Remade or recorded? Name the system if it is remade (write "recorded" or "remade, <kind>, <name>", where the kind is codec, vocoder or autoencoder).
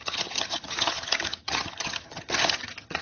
remade, vocoder, HiFi-GAN